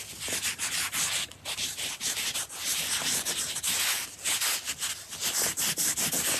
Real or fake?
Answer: real